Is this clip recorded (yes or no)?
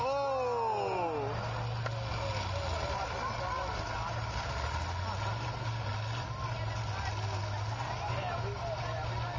yes